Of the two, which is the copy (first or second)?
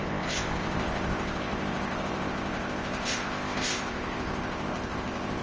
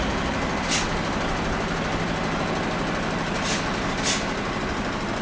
first